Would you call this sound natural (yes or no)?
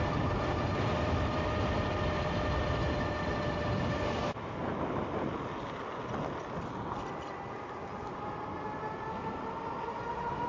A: yes